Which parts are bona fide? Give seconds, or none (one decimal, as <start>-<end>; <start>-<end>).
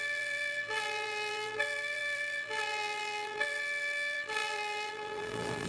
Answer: none